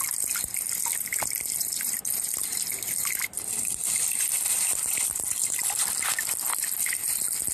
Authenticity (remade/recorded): recorded